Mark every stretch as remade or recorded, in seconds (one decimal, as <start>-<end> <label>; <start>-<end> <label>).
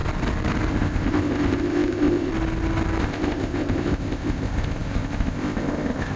0.0-0.7 recorded; 0.7-2.3 remade; 2.3-3.0 recorded; 3.0-6.2 remade